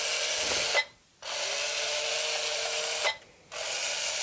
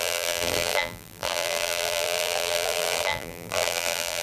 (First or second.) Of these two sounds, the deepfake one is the second